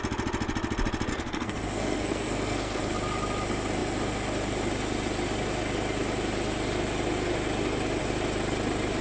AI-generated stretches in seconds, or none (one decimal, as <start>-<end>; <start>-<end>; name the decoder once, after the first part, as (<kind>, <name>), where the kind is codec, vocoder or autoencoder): 1.1-2.8 (codec, SNAC)